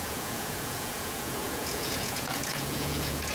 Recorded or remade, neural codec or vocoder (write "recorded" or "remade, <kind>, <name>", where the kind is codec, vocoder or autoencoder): remade, vocoder, Vocos